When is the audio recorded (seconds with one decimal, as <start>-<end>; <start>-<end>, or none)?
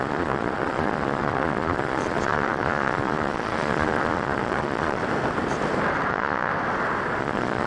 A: 5.0-6.1; 6.5-7.2